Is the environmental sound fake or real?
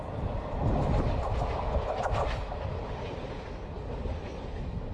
real